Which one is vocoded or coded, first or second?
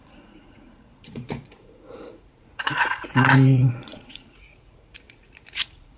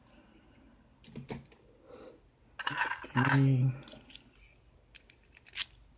first